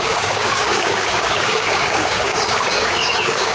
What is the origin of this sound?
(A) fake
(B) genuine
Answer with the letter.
A